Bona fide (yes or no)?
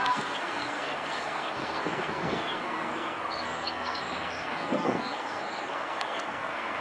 no